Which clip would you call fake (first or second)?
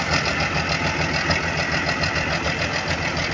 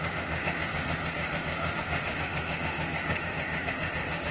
second